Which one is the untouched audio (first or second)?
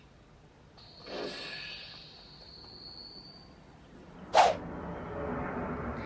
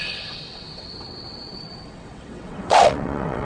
first